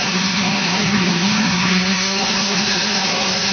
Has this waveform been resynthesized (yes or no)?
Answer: yes